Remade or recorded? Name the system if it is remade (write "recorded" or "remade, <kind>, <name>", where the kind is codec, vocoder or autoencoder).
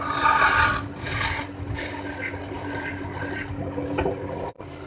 recorded